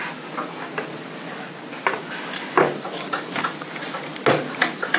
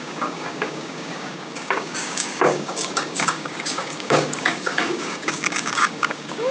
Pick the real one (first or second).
first